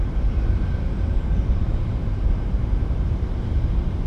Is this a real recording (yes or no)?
no